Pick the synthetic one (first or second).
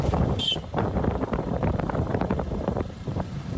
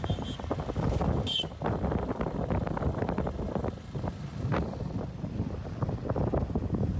first